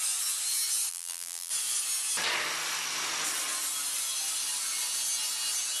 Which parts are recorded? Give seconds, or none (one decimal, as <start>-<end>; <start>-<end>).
0.0-0.9; 1.5-5.8